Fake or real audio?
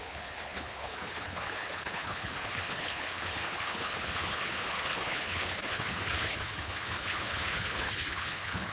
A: fake